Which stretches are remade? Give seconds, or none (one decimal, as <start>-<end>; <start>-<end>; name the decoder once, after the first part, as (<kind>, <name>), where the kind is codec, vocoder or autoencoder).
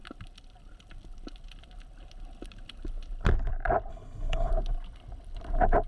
3.9-4.5 (codec, HILCodec)